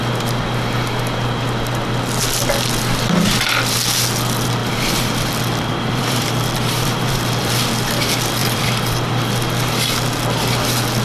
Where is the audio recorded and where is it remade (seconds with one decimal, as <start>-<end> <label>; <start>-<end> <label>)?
0.0-4.6 recorded; 4.6-7.9 remade; 7.9-8.4 recorded; 8.4-9.1 remade; 9.1-11.0 recorded

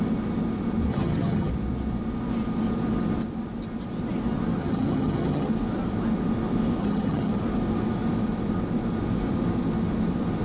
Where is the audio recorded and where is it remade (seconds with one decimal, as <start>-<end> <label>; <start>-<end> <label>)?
0.0-0.9 recorded; 0.9-1.5 remade; 1.5-4.6 recorded; 4.6-5.5 remade; 5.5-6.8 recorded; 6.8-7.3 remade; 7.3-10.4 recorded

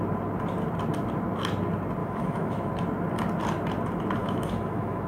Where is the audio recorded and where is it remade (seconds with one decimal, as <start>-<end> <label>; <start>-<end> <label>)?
0.0-2.0 recorded; 2.0-2.7 remade; 2.7-4.2 recorded; 4.2-5.1 remade

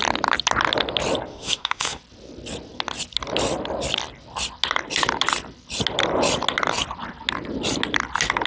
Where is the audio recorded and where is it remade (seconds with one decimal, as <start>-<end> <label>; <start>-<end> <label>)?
0.0-1.3 recorded; 1.3-2.0 remade; 2.0-8.5 recorded

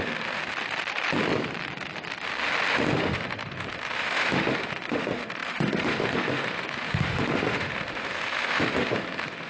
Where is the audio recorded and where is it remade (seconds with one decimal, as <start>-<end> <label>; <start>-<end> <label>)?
0.0-0.4 remade; 0.4-2.7 recorded; 2.7-9.5 remade

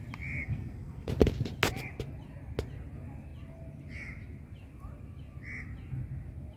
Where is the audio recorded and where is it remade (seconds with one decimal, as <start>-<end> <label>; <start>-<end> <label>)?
0.0-0.4 recorded; 0.4-1.1 remade; 1.1-6.6 recorded